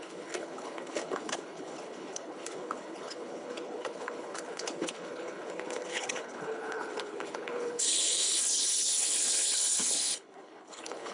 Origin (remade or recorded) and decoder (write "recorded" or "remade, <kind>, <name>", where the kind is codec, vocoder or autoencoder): remade, codec, HILCodec